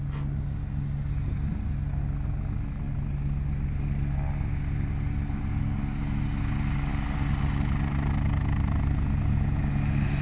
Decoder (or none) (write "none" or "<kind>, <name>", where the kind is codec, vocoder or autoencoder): none